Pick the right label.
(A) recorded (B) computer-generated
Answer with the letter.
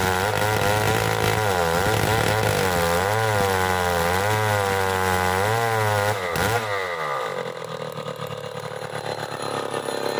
A